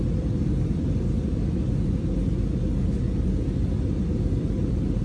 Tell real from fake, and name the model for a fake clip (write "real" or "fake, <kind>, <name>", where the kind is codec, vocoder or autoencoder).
real